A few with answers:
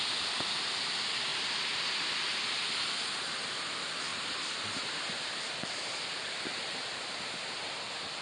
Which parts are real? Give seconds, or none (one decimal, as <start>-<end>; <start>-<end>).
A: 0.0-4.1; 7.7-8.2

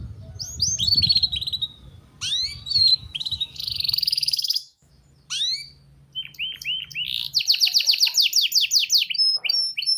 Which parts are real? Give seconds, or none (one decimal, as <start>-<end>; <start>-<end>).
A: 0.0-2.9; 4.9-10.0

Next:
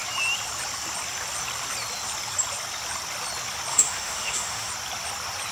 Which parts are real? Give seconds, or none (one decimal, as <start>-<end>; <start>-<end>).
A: 0.0-3.7; 4.7-5.5

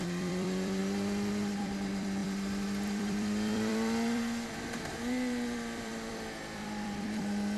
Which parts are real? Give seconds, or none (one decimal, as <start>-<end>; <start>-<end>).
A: 0.8-1.6

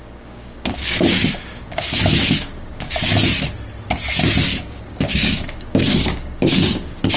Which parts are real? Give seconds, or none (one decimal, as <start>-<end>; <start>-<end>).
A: 3.1-4.5